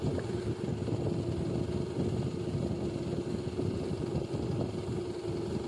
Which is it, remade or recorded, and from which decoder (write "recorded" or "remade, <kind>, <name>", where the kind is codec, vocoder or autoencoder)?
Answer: recorded